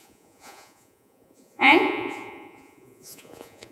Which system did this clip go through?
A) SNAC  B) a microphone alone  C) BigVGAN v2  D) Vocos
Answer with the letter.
D